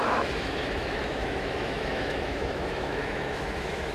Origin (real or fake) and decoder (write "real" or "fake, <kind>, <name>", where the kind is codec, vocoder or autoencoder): fake, autoencoder, DAC-VAE